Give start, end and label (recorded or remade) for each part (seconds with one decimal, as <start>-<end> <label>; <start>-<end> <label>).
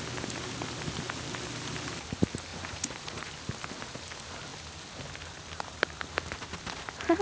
0.0-2.5 recorded; 2.5-3.3 remade; 3.3-7.2 recorded